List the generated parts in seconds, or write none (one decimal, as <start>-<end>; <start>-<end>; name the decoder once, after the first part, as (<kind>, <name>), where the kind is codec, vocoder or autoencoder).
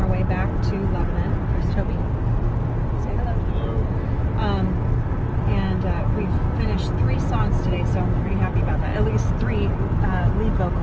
none